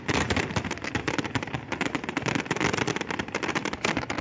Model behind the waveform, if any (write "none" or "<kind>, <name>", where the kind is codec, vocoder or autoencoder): none